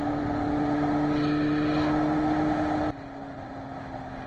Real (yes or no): yes